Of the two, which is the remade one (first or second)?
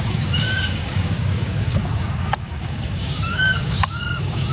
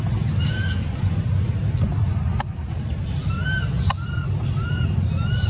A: first